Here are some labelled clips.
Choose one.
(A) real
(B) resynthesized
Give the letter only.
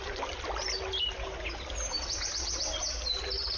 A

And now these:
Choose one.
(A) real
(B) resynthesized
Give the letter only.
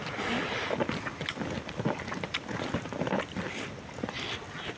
A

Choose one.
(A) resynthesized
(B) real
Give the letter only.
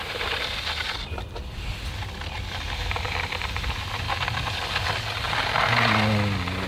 B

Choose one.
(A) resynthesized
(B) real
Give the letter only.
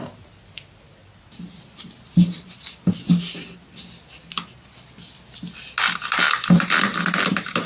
B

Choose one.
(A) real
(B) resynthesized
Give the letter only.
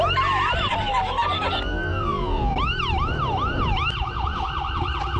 A